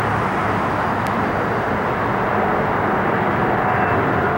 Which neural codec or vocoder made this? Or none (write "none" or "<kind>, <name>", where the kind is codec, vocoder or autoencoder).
none